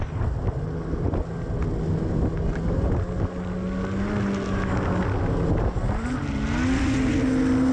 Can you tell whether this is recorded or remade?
recorded